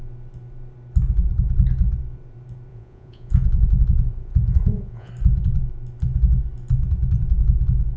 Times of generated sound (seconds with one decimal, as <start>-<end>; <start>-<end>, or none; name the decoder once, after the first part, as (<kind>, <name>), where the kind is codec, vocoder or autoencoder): 2.7-5.1 (vocoder, Vocos)